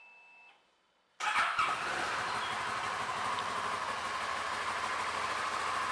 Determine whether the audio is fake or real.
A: real